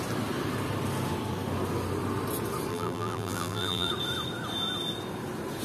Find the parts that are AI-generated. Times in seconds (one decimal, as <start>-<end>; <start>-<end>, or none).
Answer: 2.7-3.9